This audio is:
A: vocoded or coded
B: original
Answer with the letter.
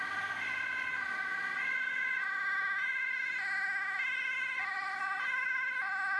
B